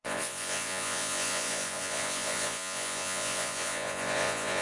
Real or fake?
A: fake